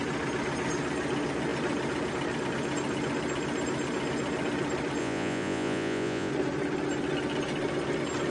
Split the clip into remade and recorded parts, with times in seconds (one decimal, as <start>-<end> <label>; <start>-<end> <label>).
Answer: 0.0-5.0 recorded; 5.0-6.3 remade; 6.3-8.3 recorded